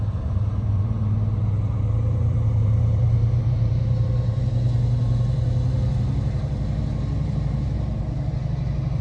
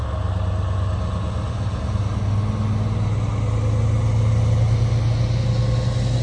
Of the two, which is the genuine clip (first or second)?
second